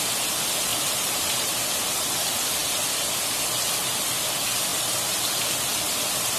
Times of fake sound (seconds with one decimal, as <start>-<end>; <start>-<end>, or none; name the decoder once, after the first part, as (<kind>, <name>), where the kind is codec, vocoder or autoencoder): 0.7-1.6 (vocoder, BigVGAN v2); 4.7-5.2